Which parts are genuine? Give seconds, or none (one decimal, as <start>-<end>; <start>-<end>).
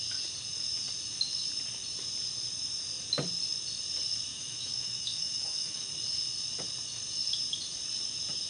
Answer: 0.0-4.3; 5.9-8.5